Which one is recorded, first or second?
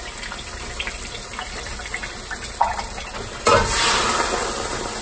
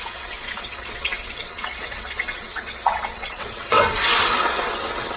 first